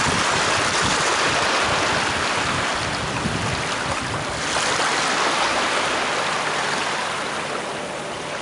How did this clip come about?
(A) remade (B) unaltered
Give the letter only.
B